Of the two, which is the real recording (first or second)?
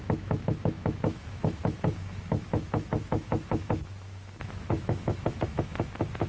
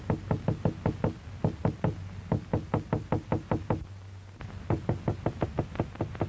second